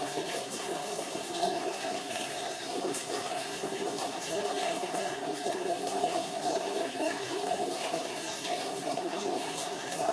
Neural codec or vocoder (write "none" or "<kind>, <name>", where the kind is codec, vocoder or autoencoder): codec, SNAC